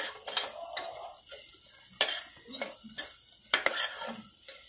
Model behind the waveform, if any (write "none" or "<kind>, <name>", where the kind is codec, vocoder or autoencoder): none